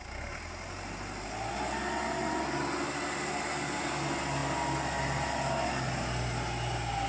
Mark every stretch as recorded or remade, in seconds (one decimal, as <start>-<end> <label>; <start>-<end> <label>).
0.0-7.1 recorded